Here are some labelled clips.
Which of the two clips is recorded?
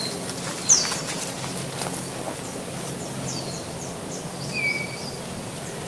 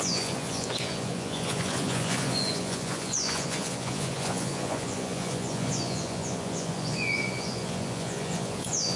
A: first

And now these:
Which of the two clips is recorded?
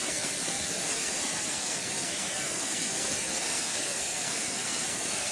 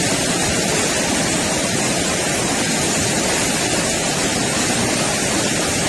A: second